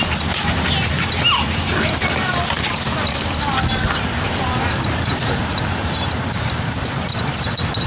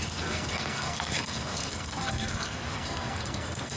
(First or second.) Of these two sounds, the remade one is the second